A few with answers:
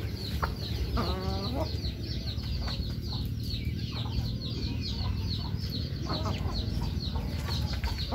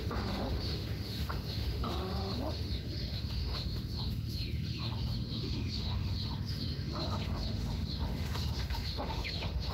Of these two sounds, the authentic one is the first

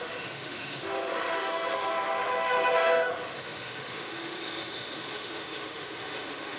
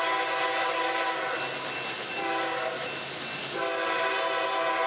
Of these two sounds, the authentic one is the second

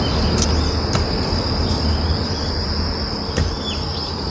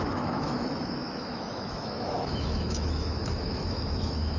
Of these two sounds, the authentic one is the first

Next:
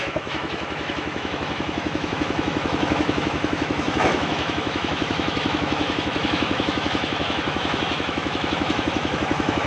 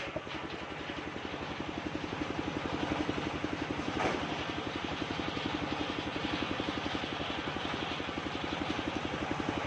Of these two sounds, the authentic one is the second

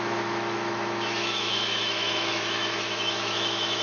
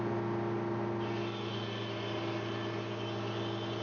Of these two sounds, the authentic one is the second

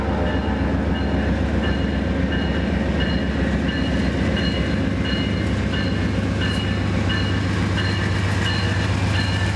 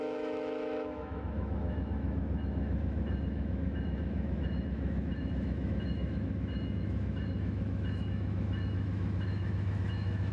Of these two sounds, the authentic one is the first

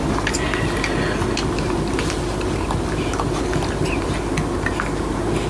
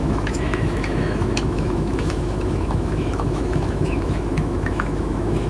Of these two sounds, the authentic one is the first